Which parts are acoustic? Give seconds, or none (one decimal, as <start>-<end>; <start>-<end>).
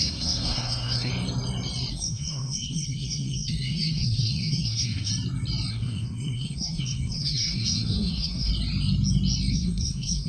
1.1-1.9; 5.1-5.7; 8.5-9.5